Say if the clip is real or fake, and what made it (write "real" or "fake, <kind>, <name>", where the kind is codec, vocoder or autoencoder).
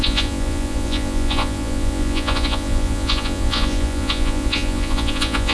fake, vocoder, Vocos